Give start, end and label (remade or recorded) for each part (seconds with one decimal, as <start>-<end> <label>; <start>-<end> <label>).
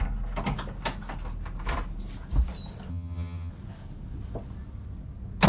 0.0-2.9 recorded; 2.9-3.5 remade; 3.5-5.5 recorded